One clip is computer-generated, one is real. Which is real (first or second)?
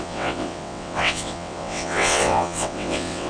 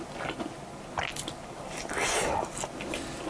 second